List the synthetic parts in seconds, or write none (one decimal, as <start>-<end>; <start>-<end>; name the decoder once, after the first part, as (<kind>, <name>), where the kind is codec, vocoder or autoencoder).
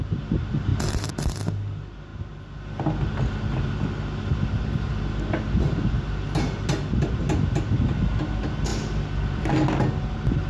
none